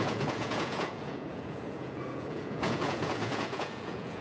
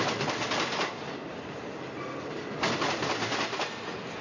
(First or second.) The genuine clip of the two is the second